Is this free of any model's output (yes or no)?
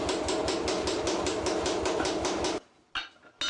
yes